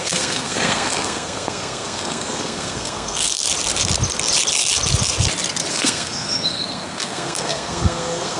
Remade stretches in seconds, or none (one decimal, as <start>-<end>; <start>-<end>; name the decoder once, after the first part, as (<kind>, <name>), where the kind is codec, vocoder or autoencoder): 0.0-3.4 (codec, SNAC); 5.7-8.4